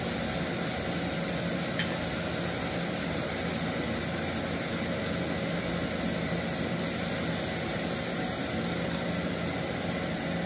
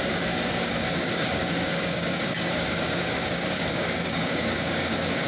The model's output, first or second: second